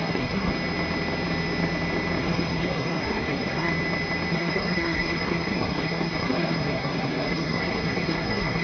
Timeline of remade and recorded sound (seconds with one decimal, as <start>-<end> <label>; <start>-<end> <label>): 0.0-0.5 remade; 0.5-2.2 recorded; 2.2-3.7 remade; 3.7-4.3 recorded; 4.3-8.6 remade